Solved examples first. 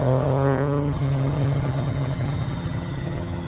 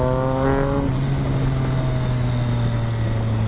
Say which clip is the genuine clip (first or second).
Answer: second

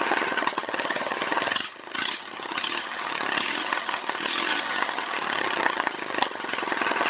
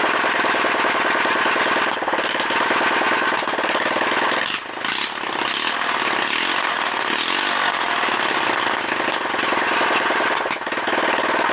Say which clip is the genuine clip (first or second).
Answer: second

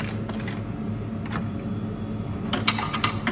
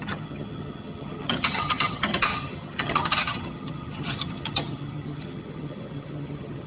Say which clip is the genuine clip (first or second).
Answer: first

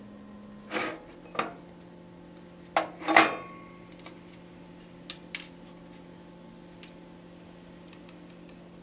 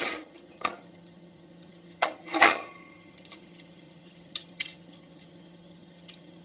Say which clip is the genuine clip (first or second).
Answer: first